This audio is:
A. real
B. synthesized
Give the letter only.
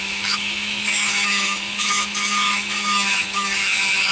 B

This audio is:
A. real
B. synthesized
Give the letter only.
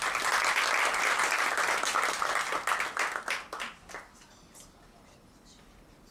A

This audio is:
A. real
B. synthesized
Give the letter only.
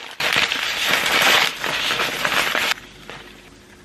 A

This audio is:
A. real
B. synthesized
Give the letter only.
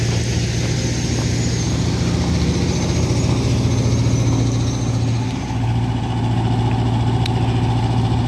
A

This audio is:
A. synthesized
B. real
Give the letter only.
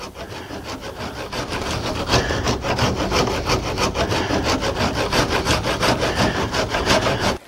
B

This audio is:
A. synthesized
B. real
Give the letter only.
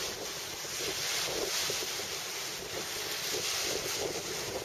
B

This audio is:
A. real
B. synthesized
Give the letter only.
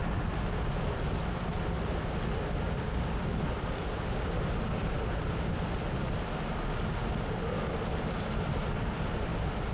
A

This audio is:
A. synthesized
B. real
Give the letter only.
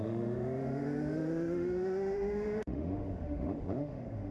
A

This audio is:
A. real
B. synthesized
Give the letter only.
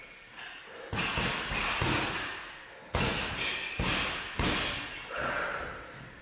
A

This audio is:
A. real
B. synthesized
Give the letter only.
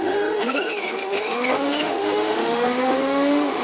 B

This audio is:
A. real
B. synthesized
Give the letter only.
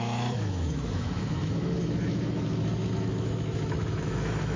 B